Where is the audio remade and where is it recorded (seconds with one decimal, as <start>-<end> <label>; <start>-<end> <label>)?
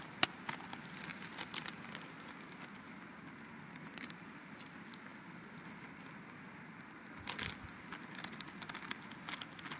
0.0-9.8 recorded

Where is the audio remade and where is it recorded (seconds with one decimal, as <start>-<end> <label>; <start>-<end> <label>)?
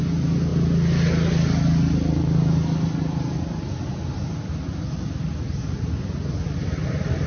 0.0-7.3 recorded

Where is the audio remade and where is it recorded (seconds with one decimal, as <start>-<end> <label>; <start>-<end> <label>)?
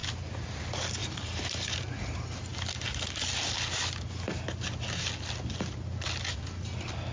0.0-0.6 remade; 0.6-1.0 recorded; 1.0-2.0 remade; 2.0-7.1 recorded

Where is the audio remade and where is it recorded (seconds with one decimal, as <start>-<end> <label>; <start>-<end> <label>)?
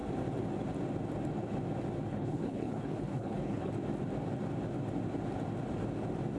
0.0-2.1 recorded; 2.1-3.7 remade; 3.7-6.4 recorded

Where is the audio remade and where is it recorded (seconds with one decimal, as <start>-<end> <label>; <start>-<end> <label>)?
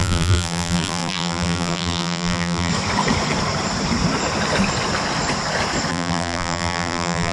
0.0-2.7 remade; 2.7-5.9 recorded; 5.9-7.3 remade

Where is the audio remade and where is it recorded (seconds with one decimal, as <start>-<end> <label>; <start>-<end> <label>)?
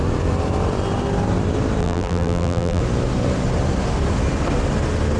0.0-1.8 recorded; 1.8-2.8 remade; 2.8-5.2 recorded